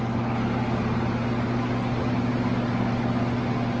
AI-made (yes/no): no